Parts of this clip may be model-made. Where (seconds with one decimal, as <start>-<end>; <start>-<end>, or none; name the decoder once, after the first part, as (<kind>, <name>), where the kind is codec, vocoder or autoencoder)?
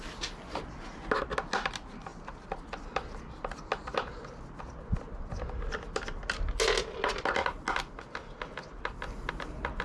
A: none